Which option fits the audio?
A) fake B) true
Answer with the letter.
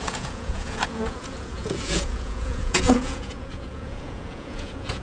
A